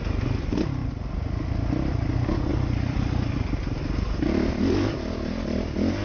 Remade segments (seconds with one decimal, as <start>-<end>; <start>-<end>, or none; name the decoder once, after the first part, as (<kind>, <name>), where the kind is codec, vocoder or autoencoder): 0.8-2.1 (vocoder, BigVGAN v2); 2.5-4.5